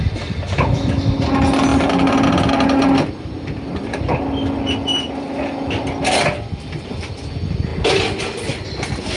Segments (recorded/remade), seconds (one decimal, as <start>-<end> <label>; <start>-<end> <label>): 0.0-9.2 recorded